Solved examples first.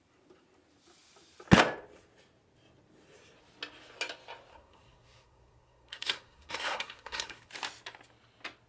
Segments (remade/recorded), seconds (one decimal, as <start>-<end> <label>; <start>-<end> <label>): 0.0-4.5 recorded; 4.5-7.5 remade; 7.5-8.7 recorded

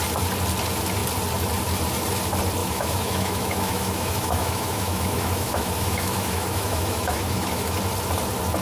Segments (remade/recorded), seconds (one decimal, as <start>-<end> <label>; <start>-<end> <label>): 0.0-2.6 recorded; 2.6-7.8 remade; 7.8-8.6 recorded

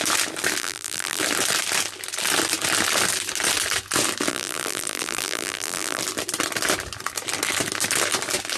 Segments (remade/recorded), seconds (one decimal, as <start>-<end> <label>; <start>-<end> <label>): 0.0-0.6 recorded; 0.6-1.2 remade; 1.2-4.3 recorded; 4.3-6.0 remade; 6.0-8.6 recorded

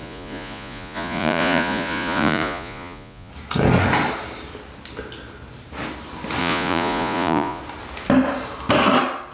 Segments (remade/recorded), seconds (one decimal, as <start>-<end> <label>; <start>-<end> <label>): 0.0-3.3 remade; 3.3-6.4 recorded; 6.4-7.6 remade; 7.6-9.3 recorded

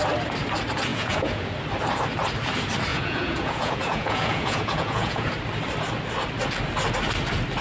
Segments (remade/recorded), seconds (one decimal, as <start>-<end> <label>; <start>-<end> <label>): 0.0-0.9 recorded; 0.9-1.5 remade; 1.5-2.9 recorded; 2.9-5.3 remade; 5.3-7.6 recorded

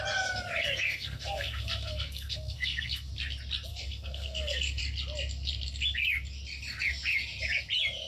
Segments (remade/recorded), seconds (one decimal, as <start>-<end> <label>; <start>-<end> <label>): 0.0-0.6 recorded; 0.6-3.1 remade; 3.1-3.7 recorded; 3.7-4.8 remade; 4.8-8.1 recorded